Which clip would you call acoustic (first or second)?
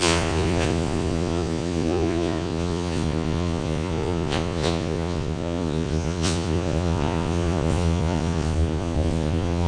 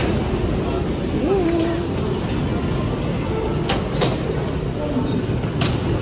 second